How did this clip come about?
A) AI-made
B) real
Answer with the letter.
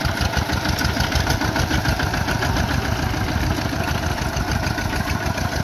B